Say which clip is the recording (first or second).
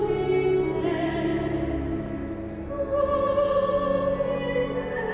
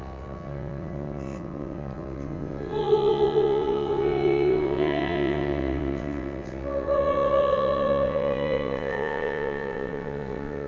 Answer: first